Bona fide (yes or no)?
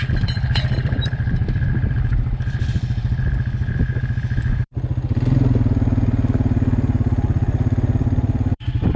no